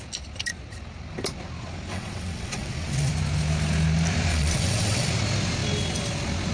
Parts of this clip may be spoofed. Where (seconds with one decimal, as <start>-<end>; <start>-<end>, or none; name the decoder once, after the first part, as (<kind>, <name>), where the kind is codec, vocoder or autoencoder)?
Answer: 1.9-3.1 (vocoder, WaveNeXt); 4.3-5.1